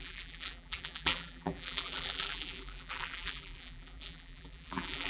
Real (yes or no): no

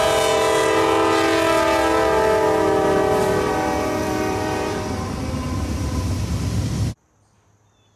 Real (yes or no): yes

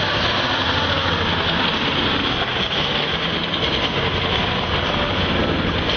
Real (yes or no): yes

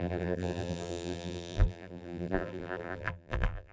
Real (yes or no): no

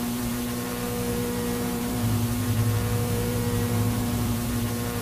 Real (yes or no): no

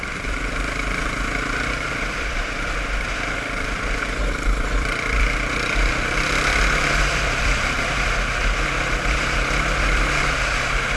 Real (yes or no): no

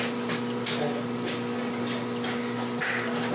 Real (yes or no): yes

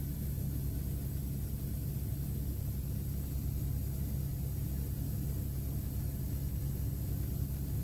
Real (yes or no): yes